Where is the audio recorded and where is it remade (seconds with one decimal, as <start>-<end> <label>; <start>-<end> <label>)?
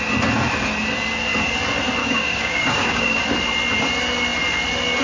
0.0-2.0 recorded; 2.0-3.2 remade; 3.2-5.0 recorded